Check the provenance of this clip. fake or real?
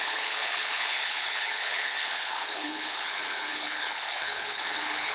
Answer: fake